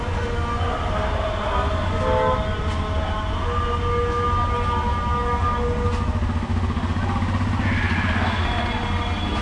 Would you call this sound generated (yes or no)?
no